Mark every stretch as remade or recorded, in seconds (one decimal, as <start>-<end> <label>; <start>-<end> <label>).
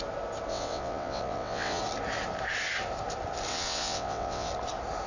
0.0-0.5 recorded; 0.5-1.8 remade; 1.8-3.5 recorded; 3.5-4.5 remade; 4.5-5.1 recorded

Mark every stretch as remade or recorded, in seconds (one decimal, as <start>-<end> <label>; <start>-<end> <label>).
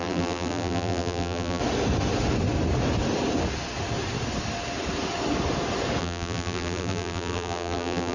0.0-1.6 remade; 1.6-6.0 recorded; 6.0-8.1 remade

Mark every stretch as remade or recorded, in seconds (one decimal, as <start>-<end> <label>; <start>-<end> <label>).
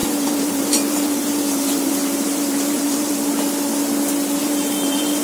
0.0-3.1 remade; 3.1-4.4 recorded; 4.4-5.2 remade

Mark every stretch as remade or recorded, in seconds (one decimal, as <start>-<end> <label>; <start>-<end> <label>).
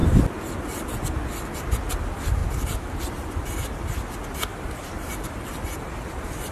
0.0-0.5 remade; 0.5-4.5 recorded; 4.5-5.9 remade; 5.9-6.5 recorded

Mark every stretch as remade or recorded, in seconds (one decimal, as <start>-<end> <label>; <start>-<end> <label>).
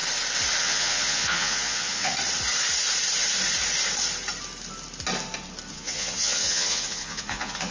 0.0-0.6 recorded; 0.6-2.1 remade; 2.1-5.7 recorded; 5.7-7.7 remade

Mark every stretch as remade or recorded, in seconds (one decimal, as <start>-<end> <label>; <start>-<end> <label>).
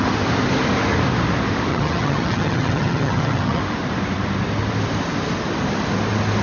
0.0-1.7 recorded; 1.7-3.6 remade; 3.6-6.4 recorded